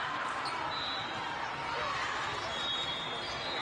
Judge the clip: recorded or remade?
recorded